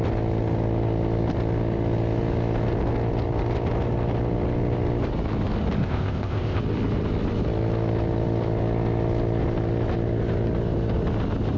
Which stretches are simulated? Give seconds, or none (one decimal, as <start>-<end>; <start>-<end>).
5.8-6.6